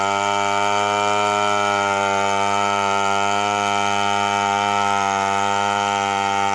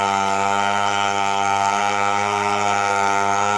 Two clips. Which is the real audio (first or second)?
first